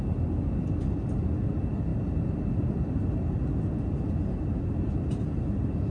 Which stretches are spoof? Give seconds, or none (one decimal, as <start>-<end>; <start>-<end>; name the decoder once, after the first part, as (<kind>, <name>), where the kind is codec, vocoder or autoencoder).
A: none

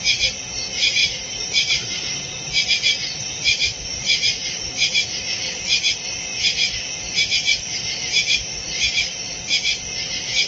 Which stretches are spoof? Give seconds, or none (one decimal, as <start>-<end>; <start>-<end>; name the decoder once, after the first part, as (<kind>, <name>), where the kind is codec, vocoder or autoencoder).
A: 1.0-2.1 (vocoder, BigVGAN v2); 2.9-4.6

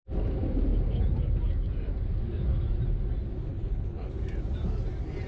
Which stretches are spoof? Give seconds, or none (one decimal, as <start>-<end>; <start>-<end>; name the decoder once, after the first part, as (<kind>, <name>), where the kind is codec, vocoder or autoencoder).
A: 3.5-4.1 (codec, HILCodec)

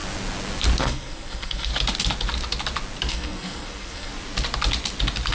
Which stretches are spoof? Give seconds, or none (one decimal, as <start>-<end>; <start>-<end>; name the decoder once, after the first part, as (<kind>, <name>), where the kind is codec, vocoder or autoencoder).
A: 0.8-1.7 (codec, SNAC); 3.1-4.1

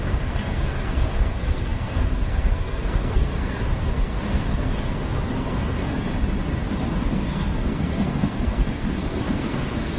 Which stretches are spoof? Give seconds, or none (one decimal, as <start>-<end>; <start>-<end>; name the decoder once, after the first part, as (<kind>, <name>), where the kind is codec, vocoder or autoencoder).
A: 0.0-6.1 (codec, SNAC); 7.0-10.0

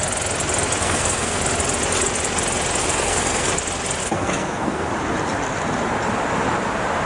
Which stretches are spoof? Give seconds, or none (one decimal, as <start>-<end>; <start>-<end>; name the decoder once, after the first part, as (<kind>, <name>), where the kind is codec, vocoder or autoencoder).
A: 0.8-1.4 (codec, SNAC); 2.8-3.5; 4.0-4.9